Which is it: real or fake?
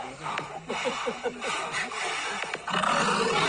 real